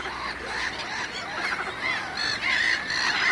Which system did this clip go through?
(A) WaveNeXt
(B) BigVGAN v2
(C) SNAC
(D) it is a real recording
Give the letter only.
D